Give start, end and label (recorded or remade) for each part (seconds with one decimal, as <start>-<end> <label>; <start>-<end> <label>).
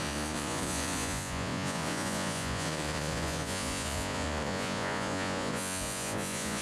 0.0-6.6 remade